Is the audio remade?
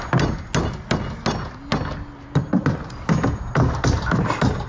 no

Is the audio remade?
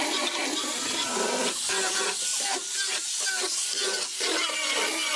no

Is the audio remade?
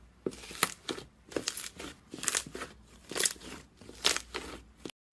no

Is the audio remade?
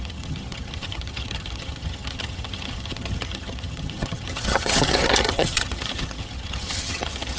yes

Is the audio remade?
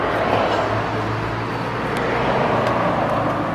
no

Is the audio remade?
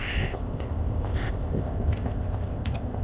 yes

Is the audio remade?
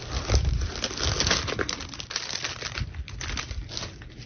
no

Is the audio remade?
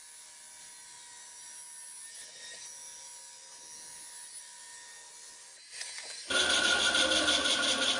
no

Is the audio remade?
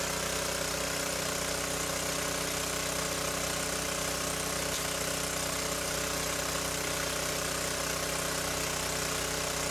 no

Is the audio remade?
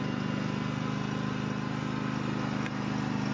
no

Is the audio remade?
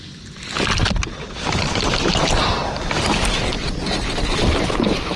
no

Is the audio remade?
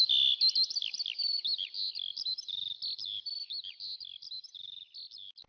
no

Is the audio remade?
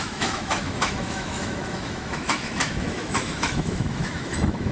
yes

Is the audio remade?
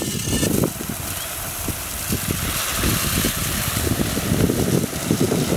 no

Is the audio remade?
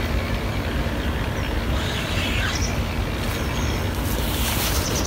no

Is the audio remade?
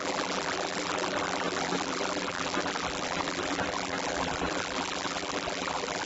yes